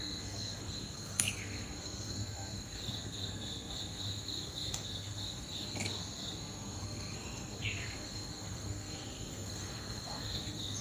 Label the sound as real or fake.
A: fake